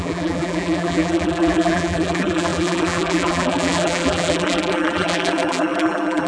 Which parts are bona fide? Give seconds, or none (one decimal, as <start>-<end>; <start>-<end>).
none